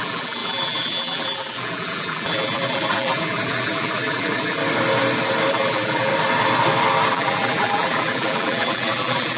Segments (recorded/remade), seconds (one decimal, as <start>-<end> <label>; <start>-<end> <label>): 0.0-4.6 remade; 4.6-5.5 recorded; 5.5-6.1 remade; 6.1-7.1 recorded; 7.1-9.4 remade